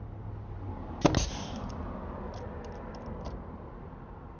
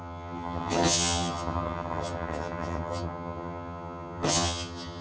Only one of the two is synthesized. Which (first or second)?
second